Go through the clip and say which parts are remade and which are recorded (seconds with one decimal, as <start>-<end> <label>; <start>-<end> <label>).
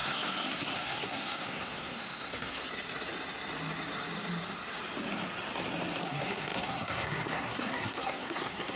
0.0-2.6 remade; 2.6-6.0 recorded; 6.0-8.8 remade